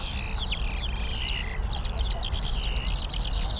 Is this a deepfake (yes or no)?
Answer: no